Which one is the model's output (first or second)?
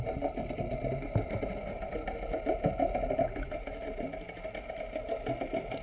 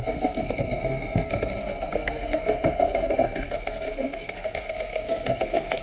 second